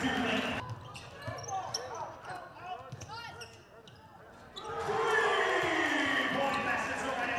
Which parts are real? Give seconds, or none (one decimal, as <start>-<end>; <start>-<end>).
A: 0.0-4.8; 6.3-7.4